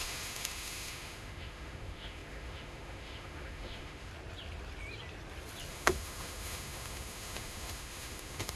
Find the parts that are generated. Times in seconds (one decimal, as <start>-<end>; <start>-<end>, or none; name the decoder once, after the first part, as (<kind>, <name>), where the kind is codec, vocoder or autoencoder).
0.0-4.1 (autoencoder, DAC-VAE); 5.7-8.6